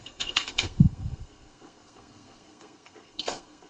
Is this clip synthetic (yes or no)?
yes